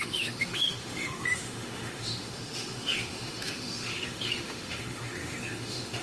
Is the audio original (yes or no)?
no